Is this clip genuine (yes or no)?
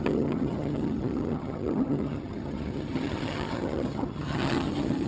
no